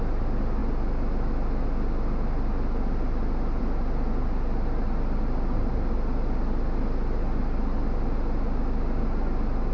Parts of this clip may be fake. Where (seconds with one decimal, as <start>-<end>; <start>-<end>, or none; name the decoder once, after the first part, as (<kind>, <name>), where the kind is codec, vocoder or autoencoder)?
none

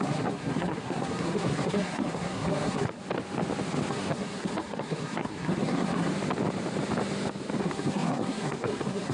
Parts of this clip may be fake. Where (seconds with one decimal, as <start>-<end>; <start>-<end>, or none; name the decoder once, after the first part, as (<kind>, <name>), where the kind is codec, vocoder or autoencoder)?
0.0-3.0 (codec, SNAC); 3.9-6.1; 7.6-9.1